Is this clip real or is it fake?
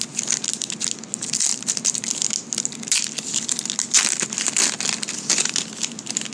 real